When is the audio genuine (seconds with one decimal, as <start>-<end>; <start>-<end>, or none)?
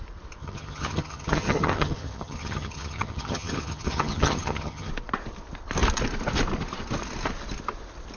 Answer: 0.0-0.4; 4.9-8.2